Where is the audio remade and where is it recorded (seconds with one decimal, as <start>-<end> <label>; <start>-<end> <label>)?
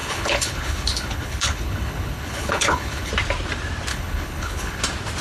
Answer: 0.0-3.1 remade; 3.1-3.9 recorded; 3.9-4.8 remade; 4.8-5.2 recorded